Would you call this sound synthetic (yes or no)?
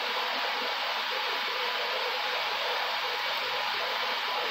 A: no